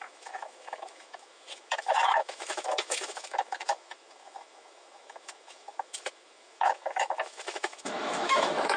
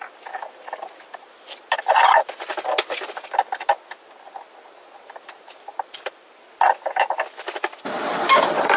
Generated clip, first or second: first